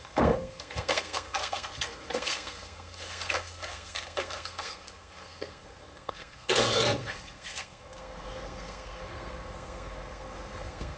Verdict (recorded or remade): remade